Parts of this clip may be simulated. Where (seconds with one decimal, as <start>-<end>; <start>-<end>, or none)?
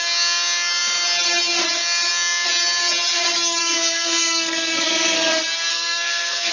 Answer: 3.6-5.3; 5.7-6.5